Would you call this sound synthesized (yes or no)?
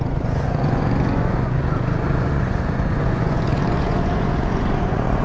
yes